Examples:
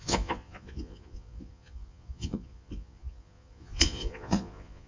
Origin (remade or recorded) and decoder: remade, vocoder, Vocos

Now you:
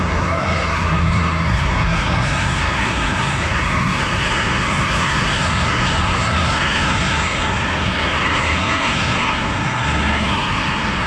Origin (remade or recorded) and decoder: remade, codec, SNAC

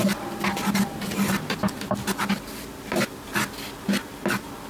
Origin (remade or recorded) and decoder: recorded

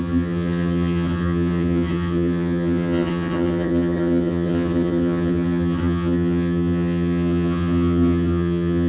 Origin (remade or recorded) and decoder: remade, vocoder, HiFi-GAN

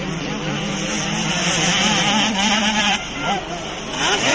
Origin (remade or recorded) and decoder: remade, vocoder, BigVGAN v2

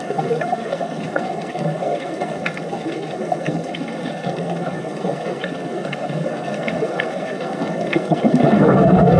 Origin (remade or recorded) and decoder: remade, codec, SNAC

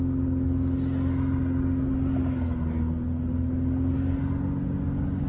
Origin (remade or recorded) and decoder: recorded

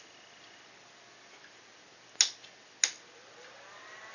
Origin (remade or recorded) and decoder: recorded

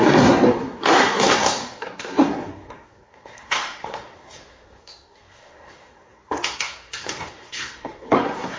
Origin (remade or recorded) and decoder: remade, codec, SNAC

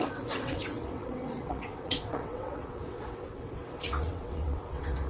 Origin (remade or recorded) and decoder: remade, vocoder, WaveNeXt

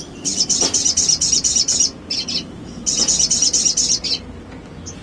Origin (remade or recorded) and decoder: recorded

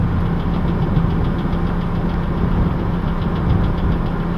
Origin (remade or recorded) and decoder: recorded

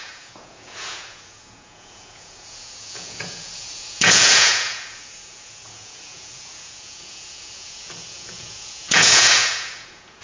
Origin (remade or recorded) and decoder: remade, vocoder, Vocos